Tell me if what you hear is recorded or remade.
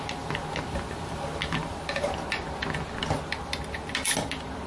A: recorded